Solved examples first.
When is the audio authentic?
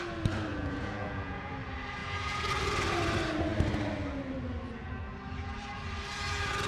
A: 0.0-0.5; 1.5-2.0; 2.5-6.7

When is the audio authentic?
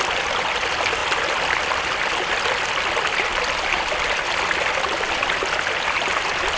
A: 0.0-6.6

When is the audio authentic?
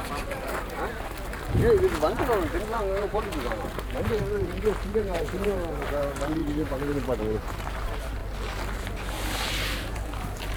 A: 0.9-3.0; 8.2-9.9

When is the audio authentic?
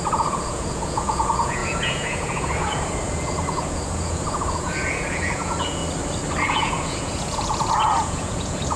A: 5.8-6.4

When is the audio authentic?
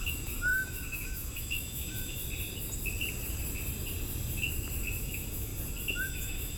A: 2.2-5.0; 5.5-6.1